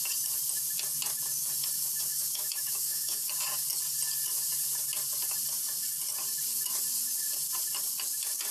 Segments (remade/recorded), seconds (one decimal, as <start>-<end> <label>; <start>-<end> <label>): 0.0-2.1 recorded; 2.1-3.3 remade; 3.3-8.5 recorded